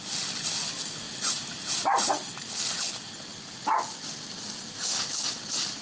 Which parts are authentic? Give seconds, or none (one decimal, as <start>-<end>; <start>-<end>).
0.0-5.8